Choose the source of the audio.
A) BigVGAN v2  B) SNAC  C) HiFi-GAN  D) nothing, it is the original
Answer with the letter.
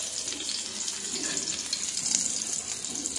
D